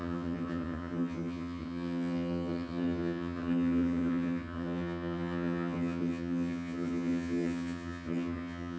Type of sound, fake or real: fake